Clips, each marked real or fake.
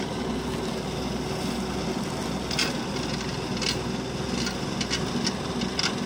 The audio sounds real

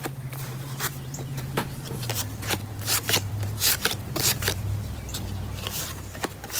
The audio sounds fake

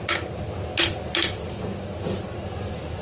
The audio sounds real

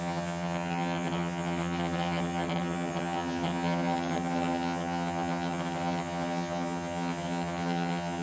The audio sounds fake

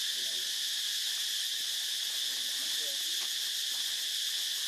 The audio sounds real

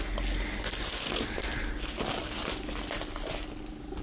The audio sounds real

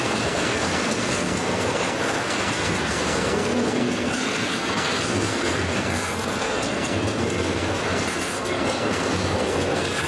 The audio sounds fake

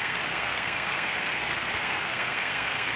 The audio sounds fake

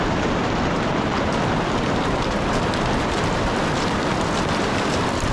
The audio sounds fake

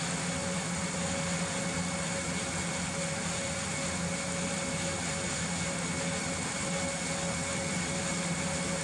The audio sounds real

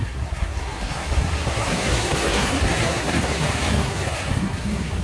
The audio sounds fake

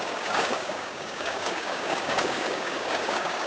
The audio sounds fake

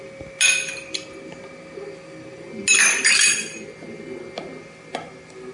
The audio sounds real